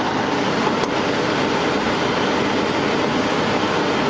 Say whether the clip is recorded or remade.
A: recorded